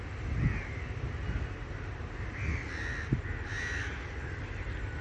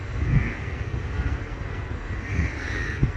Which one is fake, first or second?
second